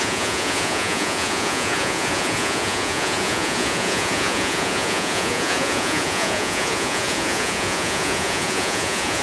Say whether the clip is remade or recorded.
remade